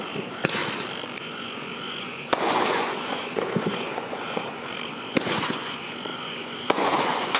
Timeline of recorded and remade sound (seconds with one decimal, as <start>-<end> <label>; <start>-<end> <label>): 0.0-0.6 remade; 0.6-1.2 recorded; 1.2-7.4 remade